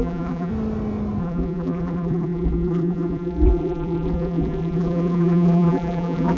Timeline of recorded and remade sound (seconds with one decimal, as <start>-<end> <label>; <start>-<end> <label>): 0.0-0.5 remade; 0.5-1.2 recorded; 1.2-6.4 remade